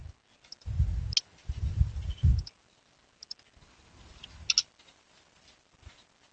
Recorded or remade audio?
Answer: recorded